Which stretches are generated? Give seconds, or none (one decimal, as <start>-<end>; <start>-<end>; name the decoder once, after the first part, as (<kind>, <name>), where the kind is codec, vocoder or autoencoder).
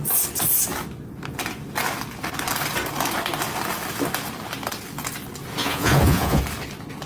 5.6-6.4 (vocoder, Vocos)